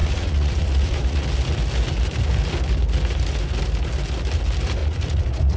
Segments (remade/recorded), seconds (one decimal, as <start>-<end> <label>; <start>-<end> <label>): 0.0-1.2 remade; 1.2-4.8 recorded; 4.8-5.6 remade